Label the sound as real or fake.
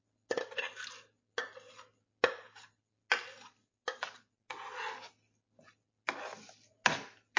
real